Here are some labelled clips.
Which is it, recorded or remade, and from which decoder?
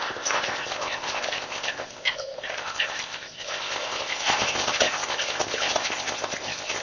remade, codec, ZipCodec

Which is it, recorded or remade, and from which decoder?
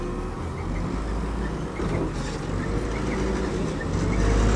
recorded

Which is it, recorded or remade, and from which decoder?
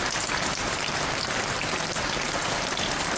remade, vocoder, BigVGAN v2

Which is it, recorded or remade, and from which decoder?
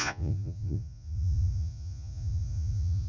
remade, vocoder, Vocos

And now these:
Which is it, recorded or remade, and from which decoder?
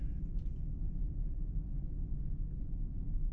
recorded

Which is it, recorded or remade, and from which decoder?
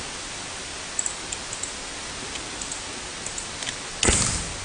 recorded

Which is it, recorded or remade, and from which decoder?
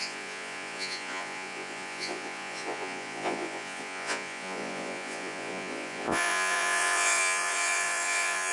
remade, vocoder, Vocos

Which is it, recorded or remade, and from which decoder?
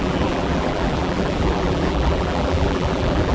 remade, vocoder, BigVGAN v2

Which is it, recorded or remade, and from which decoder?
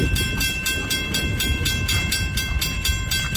remade, vocoder, BigVGAN v2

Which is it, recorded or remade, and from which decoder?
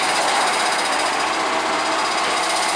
recorded